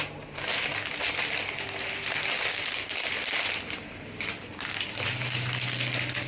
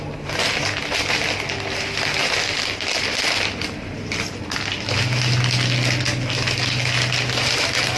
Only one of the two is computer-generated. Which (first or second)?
first